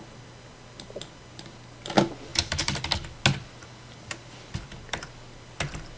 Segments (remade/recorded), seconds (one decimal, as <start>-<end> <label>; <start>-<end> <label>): 0.0-2.3 recorded; 2.3-3.2 remade; 3.2-3.6 recorded; 3.6-5.0 remade; 5.0-6.0 recorded